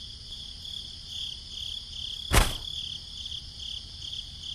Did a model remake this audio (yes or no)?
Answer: no